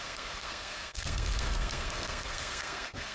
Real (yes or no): no